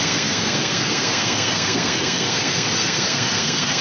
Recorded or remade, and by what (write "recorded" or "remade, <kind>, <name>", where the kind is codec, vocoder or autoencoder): remade, codec, SNAC